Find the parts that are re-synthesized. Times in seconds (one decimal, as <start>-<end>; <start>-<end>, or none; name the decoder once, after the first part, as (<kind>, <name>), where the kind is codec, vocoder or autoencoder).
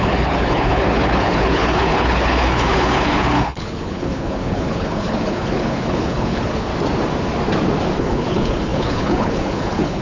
0.0-6.7 (codec, HILCodec); 8.0-10.0